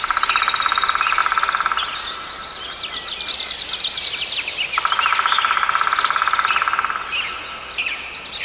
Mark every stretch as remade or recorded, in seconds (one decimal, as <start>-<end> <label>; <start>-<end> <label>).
0.0-8.4 recorded